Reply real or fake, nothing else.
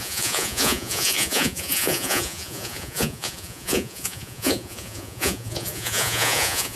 fake